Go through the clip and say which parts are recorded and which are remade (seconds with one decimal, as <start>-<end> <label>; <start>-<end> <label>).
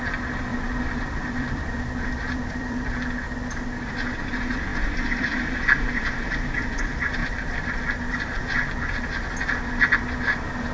0.0-0.5 recorded; 0.5-3.1 remade; 3.1-7.2 recorded; 7.2-8.4 remade; 8.4-10.7 recorded